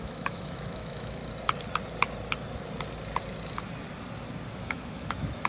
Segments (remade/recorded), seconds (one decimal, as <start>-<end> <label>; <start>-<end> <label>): 0.0-1.2 remade; 1.2-4.5 recorded; 4.5-5.5 remade